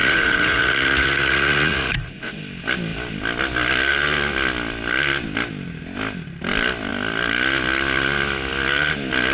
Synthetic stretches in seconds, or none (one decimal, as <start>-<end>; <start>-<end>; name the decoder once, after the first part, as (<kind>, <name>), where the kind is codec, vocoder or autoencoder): 0.0-2.4 (vocoder, Vocos)